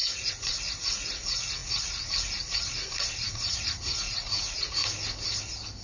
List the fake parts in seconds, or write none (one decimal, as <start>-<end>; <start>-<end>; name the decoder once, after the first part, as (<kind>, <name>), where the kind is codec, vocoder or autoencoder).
0.0-4.8 (vocoder, Vocos)